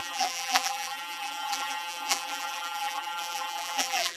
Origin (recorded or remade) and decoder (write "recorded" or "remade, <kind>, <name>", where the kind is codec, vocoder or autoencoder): remade, vocoder, BigVGAN v2